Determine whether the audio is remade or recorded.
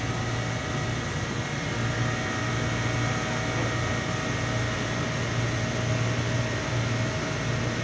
recorded